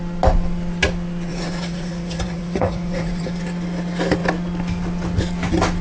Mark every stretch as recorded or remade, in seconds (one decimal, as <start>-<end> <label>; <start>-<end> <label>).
0.0-1.3 recorded; 1.3-3.4 remade; 3.4-5.8 recorded